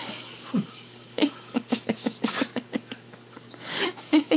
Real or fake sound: fake